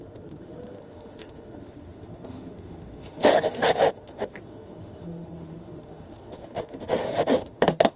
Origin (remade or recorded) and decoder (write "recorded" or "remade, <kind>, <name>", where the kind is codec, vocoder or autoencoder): remade, autoencoder, DAC-VAE